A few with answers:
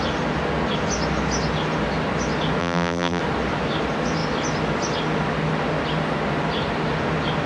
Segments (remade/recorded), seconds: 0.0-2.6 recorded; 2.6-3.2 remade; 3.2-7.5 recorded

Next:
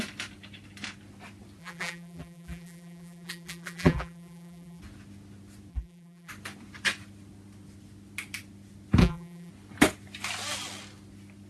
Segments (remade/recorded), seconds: 0.0-1.6 recorded; 1.6-4.8 remade; 4.8-5.7 recorded; 5.7-6.3 remade; 6.3-9.0 recorded; 9.0-9.5 remade; 9.5-11.5 recorded

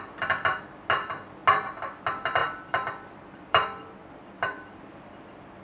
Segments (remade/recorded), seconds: 0.0-2.4 recorded; 2.4-4.8 remade; 4.8-5.6 recorded

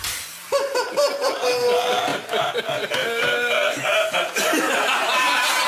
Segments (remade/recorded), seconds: 0.0-2.1 recorded; 2.1-5.7 remade

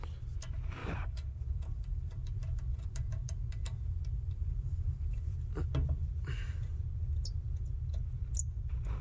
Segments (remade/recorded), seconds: 0.0-0.8 recorded; 0.8-5.6 remade; 5.6-9.0 recorded

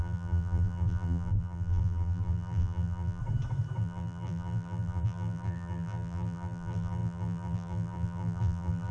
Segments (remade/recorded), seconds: 0.0-3.2 remade; 3.2-3.8 recorded; 3.8-8.9 remade

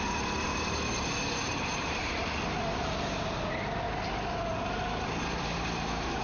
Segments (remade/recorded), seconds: 0.0-6.2 recorded